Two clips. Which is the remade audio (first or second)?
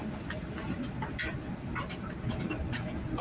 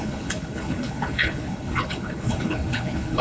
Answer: second